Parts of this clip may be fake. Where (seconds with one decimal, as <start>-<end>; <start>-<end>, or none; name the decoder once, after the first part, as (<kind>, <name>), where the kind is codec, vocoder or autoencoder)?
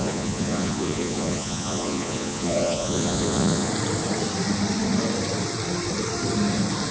0.0-3.7 (vocoder, Vocos)